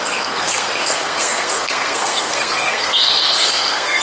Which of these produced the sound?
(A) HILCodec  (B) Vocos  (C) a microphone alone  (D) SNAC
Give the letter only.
D